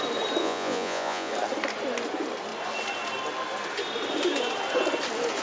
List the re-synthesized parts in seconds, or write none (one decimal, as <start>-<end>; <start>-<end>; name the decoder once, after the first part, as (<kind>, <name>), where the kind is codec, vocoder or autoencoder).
0.4-1.3 (vocoder, Vocos)